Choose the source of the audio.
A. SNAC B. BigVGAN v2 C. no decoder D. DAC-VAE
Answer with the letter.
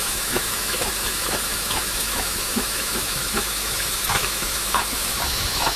D